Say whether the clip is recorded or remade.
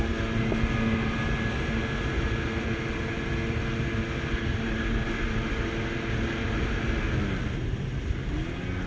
recorded